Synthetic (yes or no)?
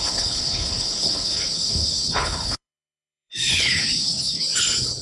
yes